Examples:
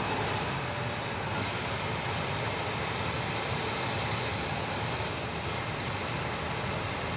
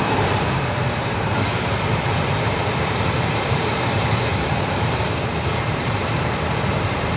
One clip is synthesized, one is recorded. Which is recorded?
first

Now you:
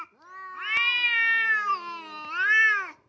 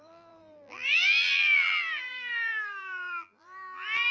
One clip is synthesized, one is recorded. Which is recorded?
first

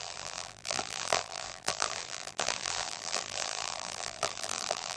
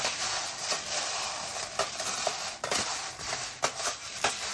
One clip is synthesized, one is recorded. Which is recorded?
second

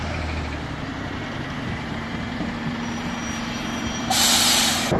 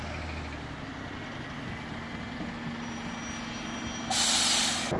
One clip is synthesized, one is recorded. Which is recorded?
second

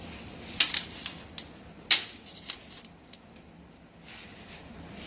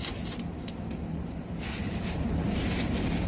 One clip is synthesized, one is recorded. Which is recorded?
first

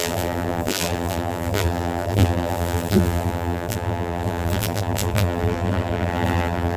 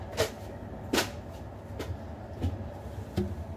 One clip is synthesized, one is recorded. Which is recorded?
second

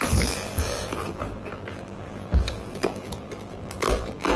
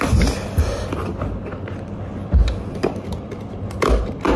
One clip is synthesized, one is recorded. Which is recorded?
second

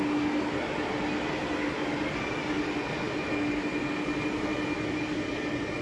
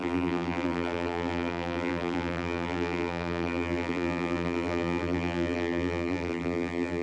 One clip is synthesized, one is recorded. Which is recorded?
first